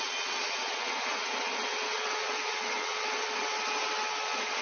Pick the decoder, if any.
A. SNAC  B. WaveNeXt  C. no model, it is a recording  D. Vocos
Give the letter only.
B